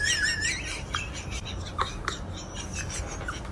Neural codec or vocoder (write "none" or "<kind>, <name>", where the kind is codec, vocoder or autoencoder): none